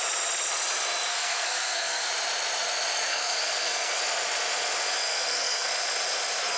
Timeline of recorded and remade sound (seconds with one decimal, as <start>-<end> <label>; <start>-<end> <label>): 0.0-1.1 recorded; 1.1-2.1 remade; 2.1-3.1 recorded; 3.1-4.0 remade; 4.0-5.1 recorded; 5.1-5.7 remade; 5.7-6.6 recorded